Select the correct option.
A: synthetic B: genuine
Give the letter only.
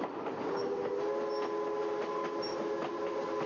B